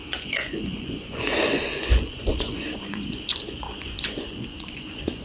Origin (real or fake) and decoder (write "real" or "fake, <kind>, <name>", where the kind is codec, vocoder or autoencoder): fake, vocoder, Vocos